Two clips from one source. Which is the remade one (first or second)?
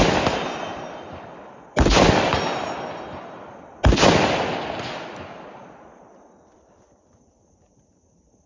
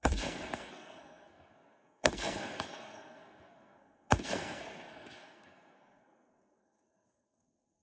second